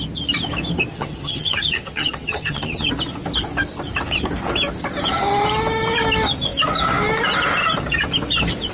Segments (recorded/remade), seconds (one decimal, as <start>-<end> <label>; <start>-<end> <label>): 0.0-0.9 recorded; 0.9-2.9 remade; 2.9-8.7 recorded